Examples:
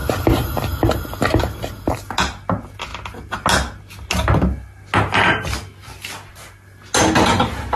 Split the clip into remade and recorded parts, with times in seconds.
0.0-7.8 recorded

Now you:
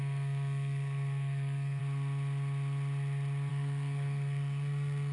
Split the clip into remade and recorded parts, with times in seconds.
0.0-1.8 remade; 1.8-3.5 recorded; 3.5-5.1 remade

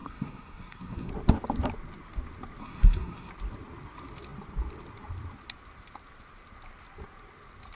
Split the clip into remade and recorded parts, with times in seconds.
0.0-1.1 remade; 1.1-2.6 recorded; 2.6-3.3 remade; 3.3-7.8 recorded

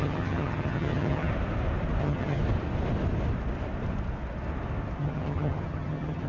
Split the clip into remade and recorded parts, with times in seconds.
0.0-1.3 remade; 1.3-2.0 recorded; 2.0-2.4 remade; 2.4-5.0 recorded; 5.0-6.3 remade

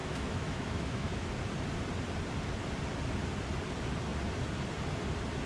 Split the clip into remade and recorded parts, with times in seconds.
0.0-1.3 remade; 1.3-5.5 recorded

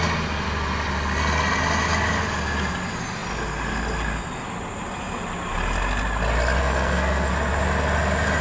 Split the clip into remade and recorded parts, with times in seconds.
0.0-6.6 recorded; 6.6-7.3 remade; 7.3-8.4 recorded

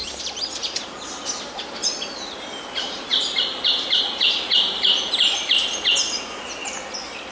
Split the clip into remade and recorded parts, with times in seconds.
0.0-3.1 remade; 3.1-4.3 recorded; 4.3-5.6 remade; 5.6-6.6 recorded; 6.6-7.3 remade